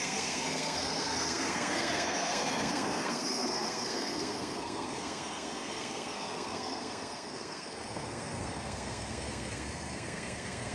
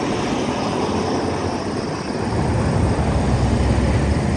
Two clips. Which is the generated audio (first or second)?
first